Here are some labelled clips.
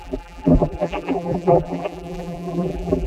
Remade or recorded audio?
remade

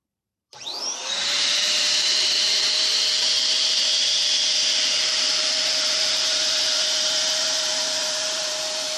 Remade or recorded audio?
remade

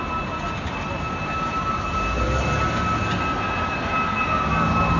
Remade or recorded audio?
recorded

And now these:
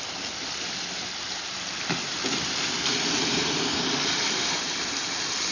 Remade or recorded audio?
remade